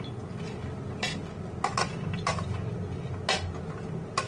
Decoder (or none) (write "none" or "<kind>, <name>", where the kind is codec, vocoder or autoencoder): none